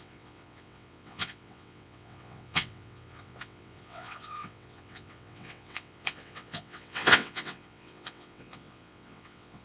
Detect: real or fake fake